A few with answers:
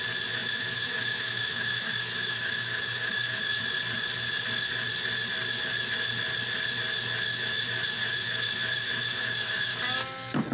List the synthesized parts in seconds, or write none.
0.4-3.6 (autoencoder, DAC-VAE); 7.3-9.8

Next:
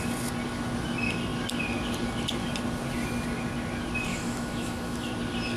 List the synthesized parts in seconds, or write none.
4.1-5.1 (autoencoder, DAC-VAE)